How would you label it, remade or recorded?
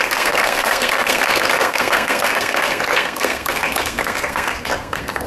remade